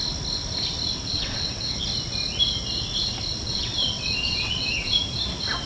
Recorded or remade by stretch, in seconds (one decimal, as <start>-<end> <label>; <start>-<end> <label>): 0.0-0.9 recorded; 0.9-1.7 remade; 1.7-3.4 recorded; 3.4-5.0 remade; 5.0-5.7 recorded